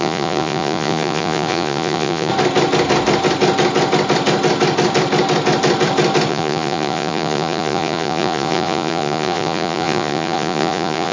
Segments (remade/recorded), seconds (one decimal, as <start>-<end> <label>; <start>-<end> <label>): 0.0-2.3 remade; 2.3-6.3 recorded; 6.3-11.1 remade